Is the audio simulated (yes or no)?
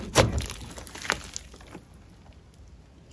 no